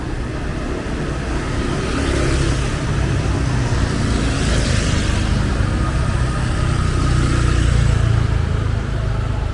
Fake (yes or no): no